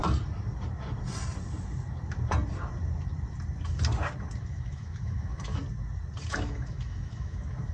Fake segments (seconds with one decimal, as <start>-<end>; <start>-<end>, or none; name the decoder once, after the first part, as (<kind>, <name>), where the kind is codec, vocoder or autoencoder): 4.4-5.6 (autoencoder, DAC-VAE); 6.3-7.7